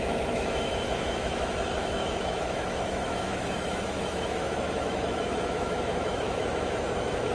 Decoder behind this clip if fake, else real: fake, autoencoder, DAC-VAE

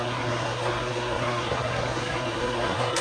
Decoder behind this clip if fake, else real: fake, codec, SNAC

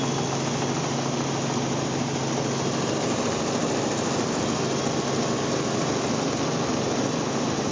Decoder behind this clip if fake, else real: real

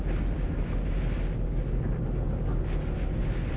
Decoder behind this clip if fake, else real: real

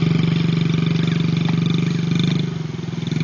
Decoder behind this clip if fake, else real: real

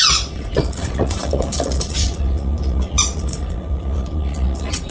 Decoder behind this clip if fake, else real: fake, vocoder, Vocos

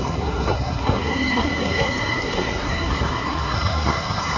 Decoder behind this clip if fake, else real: fake, codec, SNAC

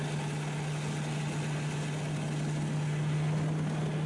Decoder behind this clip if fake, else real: real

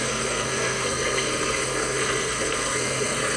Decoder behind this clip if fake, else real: fake, codec, SNAC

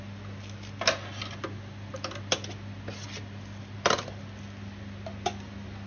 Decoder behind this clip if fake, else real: real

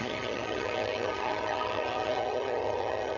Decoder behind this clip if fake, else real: fake, vocoder, HiFi-GAN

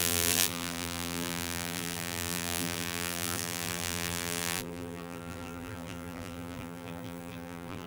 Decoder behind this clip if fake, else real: fake, vocoder, BigVGAN v2